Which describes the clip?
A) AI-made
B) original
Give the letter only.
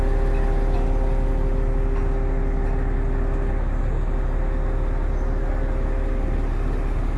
B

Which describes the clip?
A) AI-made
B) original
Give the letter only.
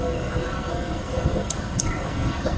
A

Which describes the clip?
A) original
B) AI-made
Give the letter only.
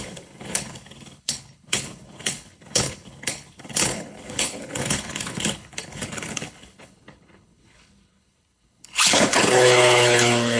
B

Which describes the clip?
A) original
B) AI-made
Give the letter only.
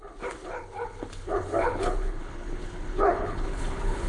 B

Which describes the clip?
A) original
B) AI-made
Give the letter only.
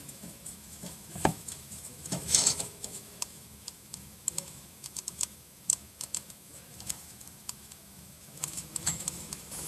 B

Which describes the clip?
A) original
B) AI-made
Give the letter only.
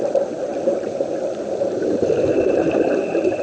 B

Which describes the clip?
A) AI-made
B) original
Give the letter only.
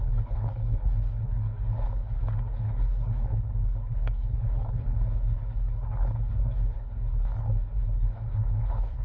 A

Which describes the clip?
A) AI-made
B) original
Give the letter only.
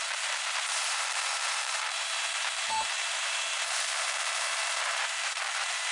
A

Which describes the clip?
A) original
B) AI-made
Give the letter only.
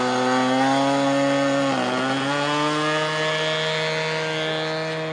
A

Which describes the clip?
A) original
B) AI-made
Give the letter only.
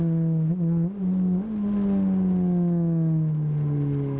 A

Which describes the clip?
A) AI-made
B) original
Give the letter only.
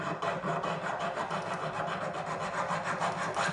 B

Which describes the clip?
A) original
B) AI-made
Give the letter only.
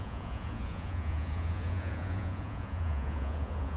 B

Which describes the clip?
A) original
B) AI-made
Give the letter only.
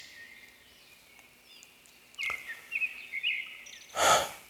A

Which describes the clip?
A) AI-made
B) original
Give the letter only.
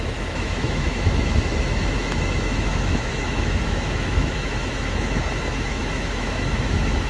A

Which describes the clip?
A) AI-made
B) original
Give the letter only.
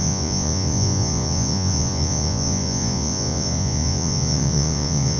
A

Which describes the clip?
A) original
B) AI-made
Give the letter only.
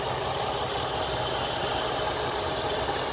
A